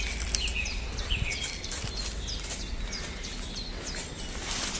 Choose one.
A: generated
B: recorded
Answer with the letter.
B